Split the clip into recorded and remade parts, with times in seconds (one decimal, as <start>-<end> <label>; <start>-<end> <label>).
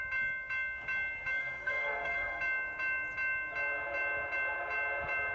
0.0-1.4 recorded; 1.4-2.4 remade; 2.4-5.3 recorded